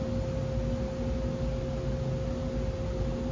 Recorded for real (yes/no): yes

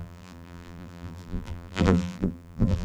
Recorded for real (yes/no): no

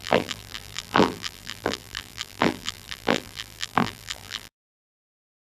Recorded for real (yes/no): no